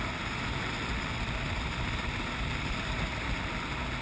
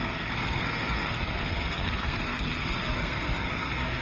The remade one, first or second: second